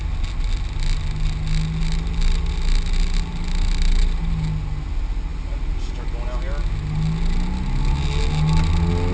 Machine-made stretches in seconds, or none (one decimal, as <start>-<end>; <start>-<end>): none